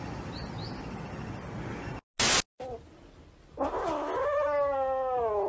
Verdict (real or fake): real